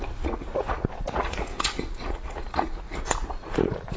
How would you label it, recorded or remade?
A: remade